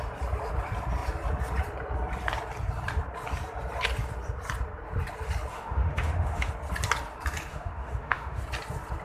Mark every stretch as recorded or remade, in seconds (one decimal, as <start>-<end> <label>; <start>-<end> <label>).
0.0-5.5 recorded; 5.5-6.5 remade; 6.5-7.5 recorded; 7.5-8.4 remade; 8.4-9.0 recorded